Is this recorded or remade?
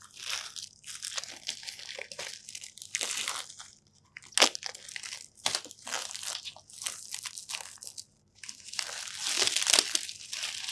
recorded